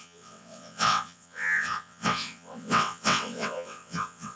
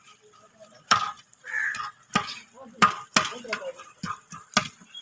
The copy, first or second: first